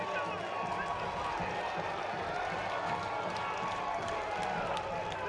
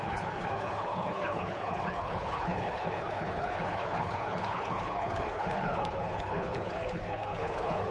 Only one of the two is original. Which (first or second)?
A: first